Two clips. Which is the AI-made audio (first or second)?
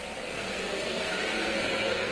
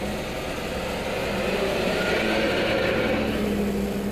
first